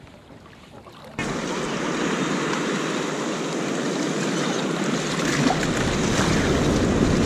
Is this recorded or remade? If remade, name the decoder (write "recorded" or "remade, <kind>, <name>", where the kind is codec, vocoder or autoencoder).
recorded